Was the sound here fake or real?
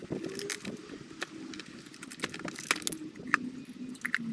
real